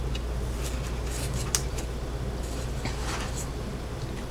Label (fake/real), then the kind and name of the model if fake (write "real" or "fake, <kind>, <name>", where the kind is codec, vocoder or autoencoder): real